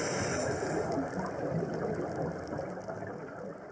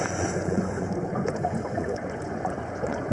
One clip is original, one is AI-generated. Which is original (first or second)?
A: first